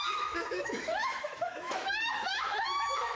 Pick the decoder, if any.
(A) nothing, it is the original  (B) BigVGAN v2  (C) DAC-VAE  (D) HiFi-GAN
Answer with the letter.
C